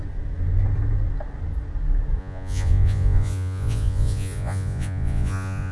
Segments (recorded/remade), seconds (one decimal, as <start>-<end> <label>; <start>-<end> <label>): 0.0-2.2 recorded; 2.2-5.7 remade